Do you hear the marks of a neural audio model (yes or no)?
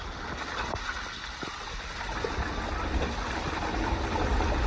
yes